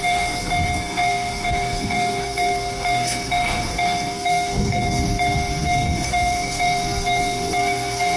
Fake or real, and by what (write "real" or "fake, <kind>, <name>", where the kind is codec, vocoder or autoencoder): fake, codec, SNAC